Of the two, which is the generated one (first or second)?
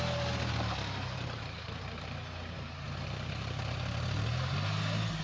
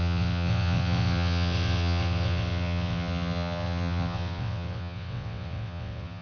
second